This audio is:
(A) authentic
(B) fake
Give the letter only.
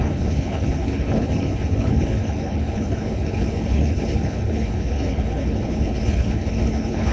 B